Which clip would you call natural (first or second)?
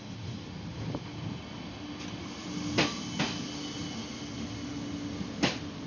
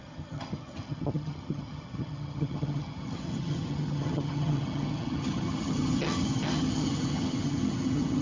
first